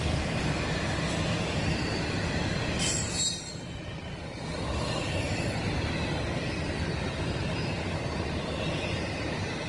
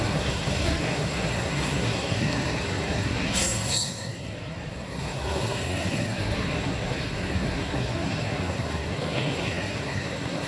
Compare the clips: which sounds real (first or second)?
first